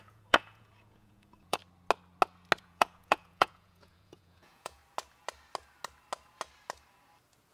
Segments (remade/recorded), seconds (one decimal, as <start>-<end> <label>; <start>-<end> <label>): 0.0-1.6 remade; 1.6-2.6 recorded; 2.6-4.8 remade; 4.8-7.5 recorded

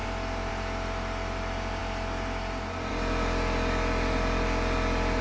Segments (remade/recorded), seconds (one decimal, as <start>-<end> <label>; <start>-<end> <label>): 0.0-5.2 recorded

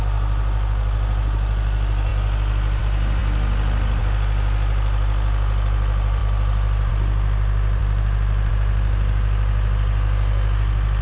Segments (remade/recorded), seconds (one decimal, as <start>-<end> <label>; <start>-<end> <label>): 0.0-11.0 recorded

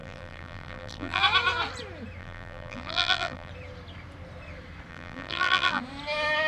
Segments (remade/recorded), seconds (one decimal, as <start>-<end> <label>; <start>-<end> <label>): 0.0-1.2 remade; 1.2-2.2 recorded; 2.2-3.5 remade; 3.5-4.9 recorded; 4.9-5.8 remade; 5.8-6.5 recorded

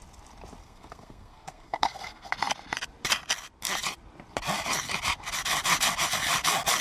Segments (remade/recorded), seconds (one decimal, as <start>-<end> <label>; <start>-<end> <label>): 0.0-0.6 recorded; 0.6-2.3 remade; 2.3-6.8 recorded